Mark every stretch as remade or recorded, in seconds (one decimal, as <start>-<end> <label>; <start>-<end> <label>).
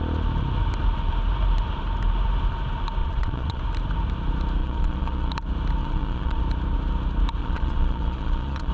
0.0-3.0 recorded; 3.0-3.6 remade; 3.6-4.6 recorded; 4.6-5.3 remade; 5.3-5.8 recorded; 5.8-6.4 remade; 6.4-7.4 recorded; 7.4-8.7 remade